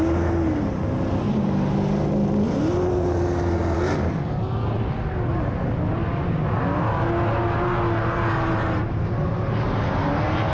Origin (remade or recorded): recorded